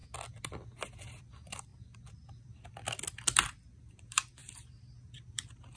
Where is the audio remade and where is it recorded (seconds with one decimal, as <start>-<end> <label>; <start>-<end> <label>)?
0.0-1.2 recorded; 1.2-1.7 remade; 1.7-3.9 recorded; 3.9-4.4 remade; 4.4-5.3 recorded; 5.3-5.8 remade